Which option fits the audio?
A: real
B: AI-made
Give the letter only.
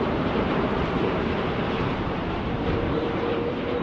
B